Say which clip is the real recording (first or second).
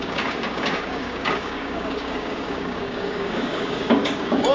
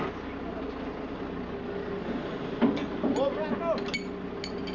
second